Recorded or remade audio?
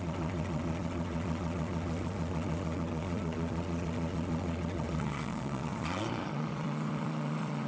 remade